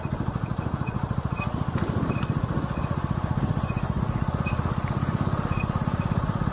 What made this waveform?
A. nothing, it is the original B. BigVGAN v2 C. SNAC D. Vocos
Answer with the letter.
A